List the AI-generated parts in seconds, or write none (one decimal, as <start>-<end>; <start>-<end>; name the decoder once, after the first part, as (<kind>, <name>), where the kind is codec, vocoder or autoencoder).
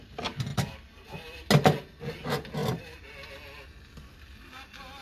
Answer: none